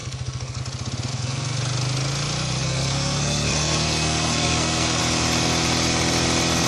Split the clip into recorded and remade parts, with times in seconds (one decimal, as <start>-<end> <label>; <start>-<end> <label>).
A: 0.0-0.6 remade; 0.6-1.1 recorded; 1.1-1.6 remade; 1.6-2.6 recorded; 2.6-5.0 remade; 5.0-6.7 recorded